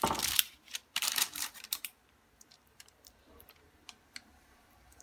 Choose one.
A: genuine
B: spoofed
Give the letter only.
B